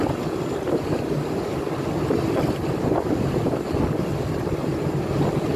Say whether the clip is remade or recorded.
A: recorded